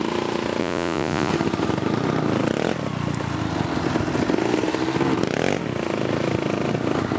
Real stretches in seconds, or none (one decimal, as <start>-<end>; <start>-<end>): 0.0-0.6; 1.3-7.2